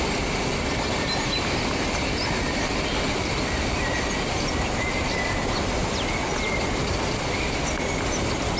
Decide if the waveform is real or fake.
real